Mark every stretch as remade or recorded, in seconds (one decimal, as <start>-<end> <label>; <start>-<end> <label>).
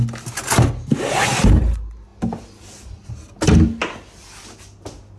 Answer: 0.0-5.2 recorded